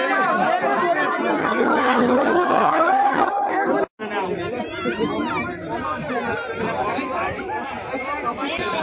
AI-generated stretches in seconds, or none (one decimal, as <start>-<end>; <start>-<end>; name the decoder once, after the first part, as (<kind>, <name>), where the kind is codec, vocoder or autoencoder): 1.4-3.5 (vocoder, HiFi-GAN)

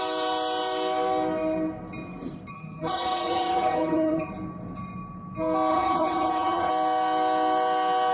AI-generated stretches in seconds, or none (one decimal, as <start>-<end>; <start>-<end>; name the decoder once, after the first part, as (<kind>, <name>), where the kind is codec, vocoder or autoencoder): 2.5-4.3 (vocoder, HiFi-GAN); 5.7-6.7

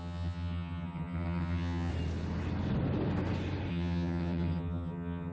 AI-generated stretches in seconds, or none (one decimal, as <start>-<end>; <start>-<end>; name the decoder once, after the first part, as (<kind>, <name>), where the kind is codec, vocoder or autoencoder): 0.0-1.9 (vocoder, HiFi-GAN); 3.7-5.3

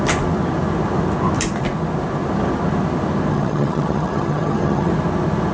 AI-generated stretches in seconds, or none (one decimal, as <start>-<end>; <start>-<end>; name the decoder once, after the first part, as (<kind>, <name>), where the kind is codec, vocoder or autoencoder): 3.3-4.9 (vocoder, HiFi-GAN)